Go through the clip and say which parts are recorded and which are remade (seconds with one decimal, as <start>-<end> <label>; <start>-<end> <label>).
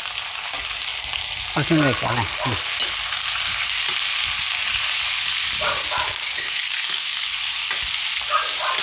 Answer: 0.0-6.2 recorded; 6.2-7.1 remade; 7.1-8.8 recorded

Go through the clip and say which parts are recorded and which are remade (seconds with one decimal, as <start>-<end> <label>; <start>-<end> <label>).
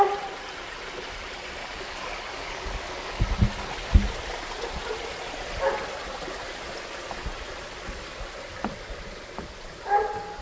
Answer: 0.0-1.6 recorded; 1.6-3.2 remade; 3.2-10.4 recorded